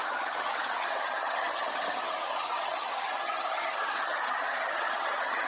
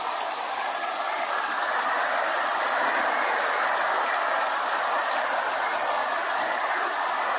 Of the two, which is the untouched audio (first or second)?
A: second